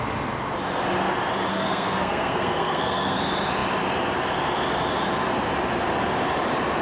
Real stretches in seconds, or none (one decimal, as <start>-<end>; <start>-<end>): 0.0-1.5; 3.2-6.8